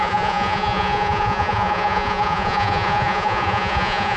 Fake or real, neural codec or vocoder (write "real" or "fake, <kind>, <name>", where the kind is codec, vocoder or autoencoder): fake, vocoder, Vocos